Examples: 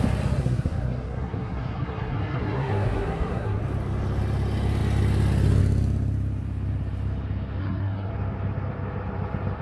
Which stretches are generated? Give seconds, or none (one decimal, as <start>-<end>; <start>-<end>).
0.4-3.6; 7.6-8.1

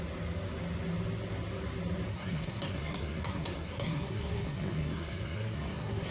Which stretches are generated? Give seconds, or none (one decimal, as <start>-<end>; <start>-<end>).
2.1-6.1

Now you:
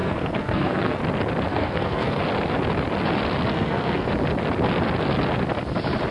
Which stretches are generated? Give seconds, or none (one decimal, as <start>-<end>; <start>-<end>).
0.0-1.0; 1.5-2.2; 3.5-4.1